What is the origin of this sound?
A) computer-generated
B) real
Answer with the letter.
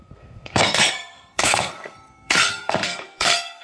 A